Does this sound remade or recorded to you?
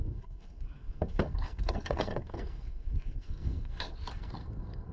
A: remade